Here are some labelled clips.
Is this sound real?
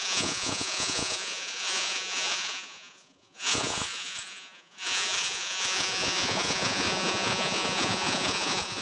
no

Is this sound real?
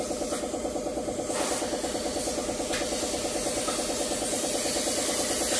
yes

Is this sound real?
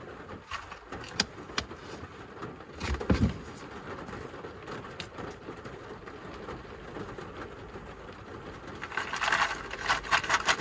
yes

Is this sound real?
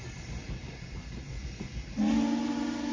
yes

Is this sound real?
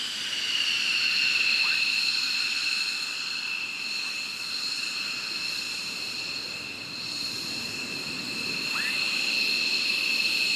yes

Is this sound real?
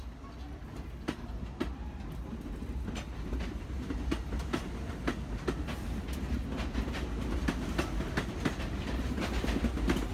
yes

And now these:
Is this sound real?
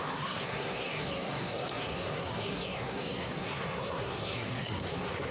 no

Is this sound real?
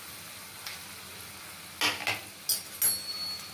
yes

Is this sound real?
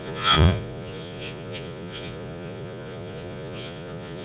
no